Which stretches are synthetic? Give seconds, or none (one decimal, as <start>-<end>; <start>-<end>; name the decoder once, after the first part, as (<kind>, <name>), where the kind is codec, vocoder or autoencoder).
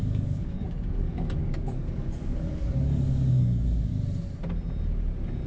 0.0-3.9 (codec, DAC)